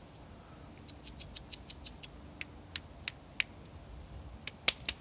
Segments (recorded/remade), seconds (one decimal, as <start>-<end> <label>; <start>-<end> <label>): 0.0-5.0 recorded